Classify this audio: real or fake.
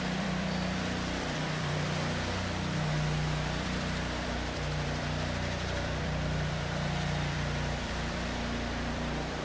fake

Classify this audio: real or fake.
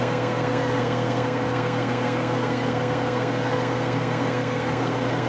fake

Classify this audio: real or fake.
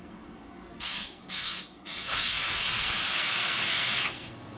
fake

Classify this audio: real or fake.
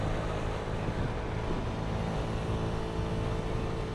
fake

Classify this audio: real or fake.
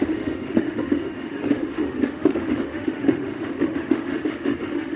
fake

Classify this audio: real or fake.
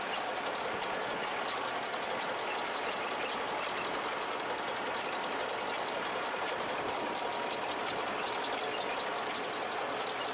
real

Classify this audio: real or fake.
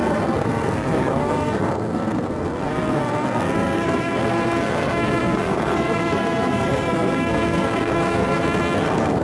fake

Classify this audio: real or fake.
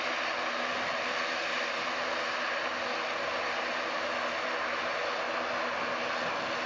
real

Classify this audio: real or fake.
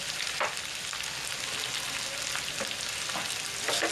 real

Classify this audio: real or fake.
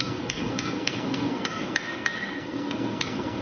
fake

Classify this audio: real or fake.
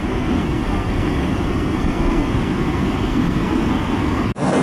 fake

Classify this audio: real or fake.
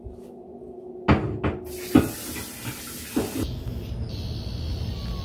real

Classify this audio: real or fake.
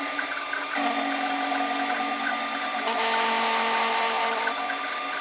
real